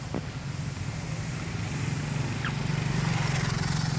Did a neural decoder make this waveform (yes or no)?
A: no